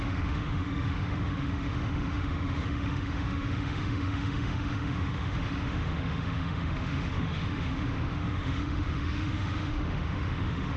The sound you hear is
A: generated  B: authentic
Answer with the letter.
A